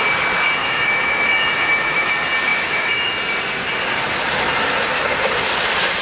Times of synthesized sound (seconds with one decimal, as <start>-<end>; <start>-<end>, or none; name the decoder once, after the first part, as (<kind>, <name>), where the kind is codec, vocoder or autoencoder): 0.6-2.1 (autoencoder, DAC-VAE); 2.5-3.1